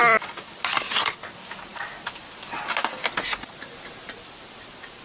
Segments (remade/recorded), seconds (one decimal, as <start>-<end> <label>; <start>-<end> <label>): 0.0-5.0 recorded